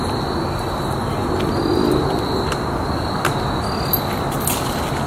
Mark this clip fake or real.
real